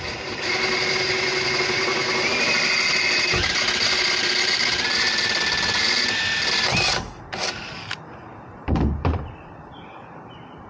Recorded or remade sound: recorded